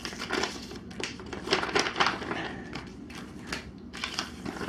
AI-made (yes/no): no